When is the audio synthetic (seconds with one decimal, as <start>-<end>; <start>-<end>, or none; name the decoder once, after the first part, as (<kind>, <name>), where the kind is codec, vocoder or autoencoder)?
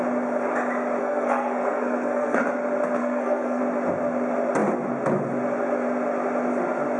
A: 1.0-2.4 (codec, SNAC); 3.0-3.6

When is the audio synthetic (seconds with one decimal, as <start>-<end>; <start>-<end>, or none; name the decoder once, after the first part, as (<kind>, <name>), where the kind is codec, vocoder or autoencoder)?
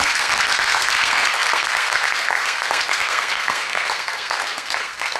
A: 0.0-5.2 (codec, SNAC)